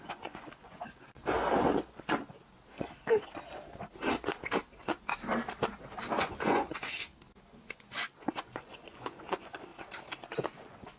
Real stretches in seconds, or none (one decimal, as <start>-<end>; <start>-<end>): 1.2-6.2; 6.7-7.5; 9.7-10.4